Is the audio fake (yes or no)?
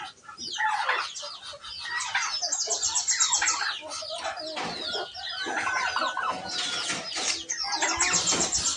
no